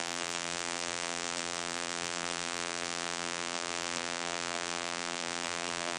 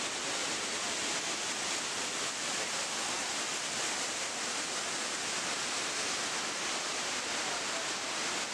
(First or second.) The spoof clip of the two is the first